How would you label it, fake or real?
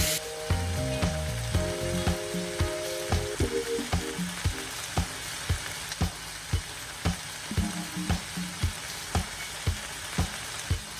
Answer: real